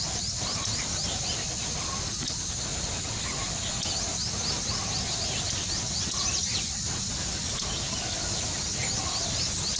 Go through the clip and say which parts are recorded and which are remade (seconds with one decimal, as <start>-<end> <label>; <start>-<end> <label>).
0.0-9.8 recorded